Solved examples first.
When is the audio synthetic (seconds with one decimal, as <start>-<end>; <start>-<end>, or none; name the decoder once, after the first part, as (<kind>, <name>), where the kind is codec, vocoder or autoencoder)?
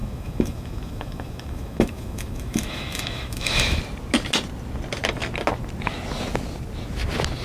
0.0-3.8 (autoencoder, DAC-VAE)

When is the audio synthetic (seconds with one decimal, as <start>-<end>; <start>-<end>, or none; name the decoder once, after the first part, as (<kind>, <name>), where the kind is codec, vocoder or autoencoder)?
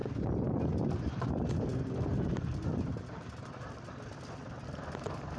none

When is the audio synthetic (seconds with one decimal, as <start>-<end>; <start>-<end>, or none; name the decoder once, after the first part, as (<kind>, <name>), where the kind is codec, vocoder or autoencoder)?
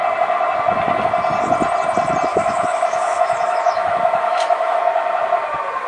2.3-4.8 (autoencoder, DAC-VAE)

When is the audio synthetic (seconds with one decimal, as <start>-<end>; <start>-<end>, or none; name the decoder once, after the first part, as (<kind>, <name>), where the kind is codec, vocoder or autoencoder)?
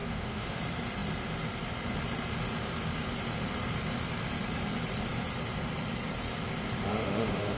0.0-0.6 (autoencoder, DAC-VAE); 6.9-7.6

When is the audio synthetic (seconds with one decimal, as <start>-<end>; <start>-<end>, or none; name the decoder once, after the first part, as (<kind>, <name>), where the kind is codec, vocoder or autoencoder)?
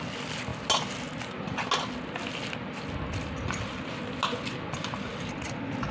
none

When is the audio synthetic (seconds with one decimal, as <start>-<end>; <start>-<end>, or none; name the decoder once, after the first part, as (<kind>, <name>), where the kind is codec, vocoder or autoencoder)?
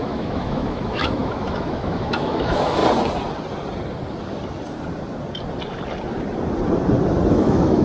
0.0-2.8 (autoencoder, DAC-VAE); 7.3-7.8